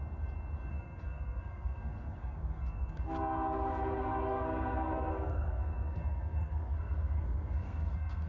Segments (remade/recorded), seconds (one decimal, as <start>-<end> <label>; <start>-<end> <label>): 0.0-0.7 recorded; 0.7-3.0 remade; 3.0-4.3 recorded; 4.3-8.3 remade